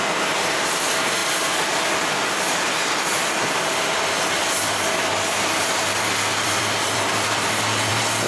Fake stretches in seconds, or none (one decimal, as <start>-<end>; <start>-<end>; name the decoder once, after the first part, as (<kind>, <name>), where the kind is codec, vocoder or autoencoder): 1.2-1.8 (vocoder, BigVGAN v2); 6.3-7.9